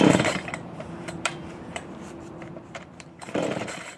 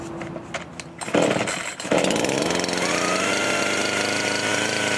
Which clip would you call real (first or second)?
second